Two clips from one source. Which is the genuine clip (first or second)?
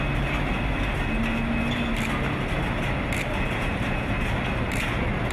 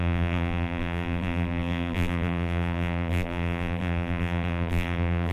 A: first